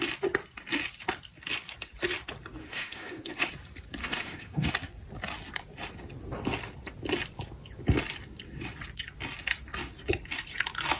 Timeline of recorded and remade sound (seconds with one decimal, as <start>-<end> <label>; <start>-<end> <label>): 0.0-2.6 recorded; 2.6-3.5 remade; 3.5-4.0 recorded; 4.0-4.7 remade; 4.7-11.0 recorded